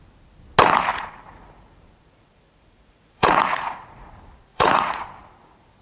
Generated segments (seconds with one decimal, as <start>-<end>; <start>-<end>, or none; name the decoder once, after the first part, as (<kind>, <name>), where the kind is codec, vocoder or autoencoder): 0.9-4.1 (vocoder, Vocos); 4.5-5.0